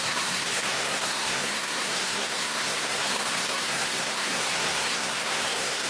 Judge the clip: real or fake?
fake